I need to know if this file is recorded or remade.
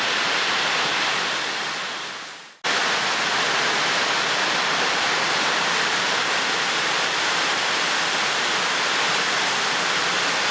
recorded